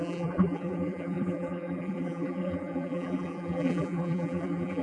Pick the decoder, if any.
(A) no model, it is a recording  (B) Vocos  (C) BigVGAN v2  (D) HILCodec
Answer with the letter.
C